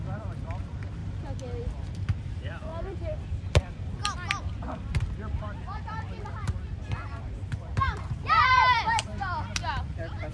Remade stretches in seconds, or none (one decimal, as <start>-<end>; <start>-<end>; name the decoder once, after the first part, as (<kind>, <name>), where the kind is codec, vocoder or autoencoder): 0.0-4.0 (vocoder, BigVGAN v2); 8.3-9.1; 9.8-10.3